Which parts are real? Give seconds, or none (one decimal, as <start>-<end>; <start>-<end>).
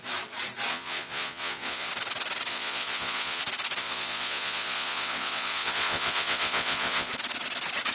0.0-0.7; 1.9-2.5; 3.4-3.8; 7.1-7.9